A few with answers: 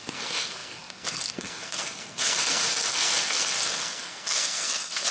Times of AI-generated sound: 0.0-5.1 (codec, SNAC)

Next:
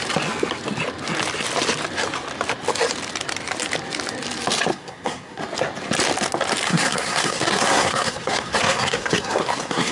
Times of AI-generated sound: 4.7-5.4 (codec, SNAC); 6.7-9.9

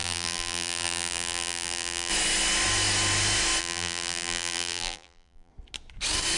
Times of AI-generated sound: 0.0-2.1 (vocoder, BigVGAN v2); 3.6-5.5

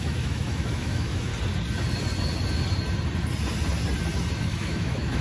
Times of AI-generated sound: 0.0-1.3 (autoencoder, DAC-VAE); 4.4-5.2

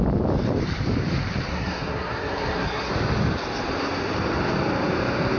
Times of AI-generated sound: 1.5-2.9 (codec, SNAC)

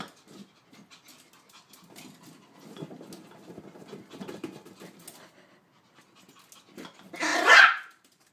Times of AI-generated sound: 7.3-8.3 (vocoder, BigVGAN v2)

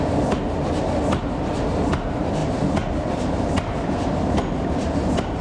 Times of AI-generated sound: none

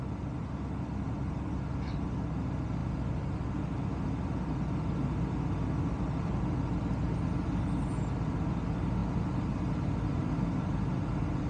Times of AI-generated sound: 9.0-9.9 (vocoder, BigVGAN v2)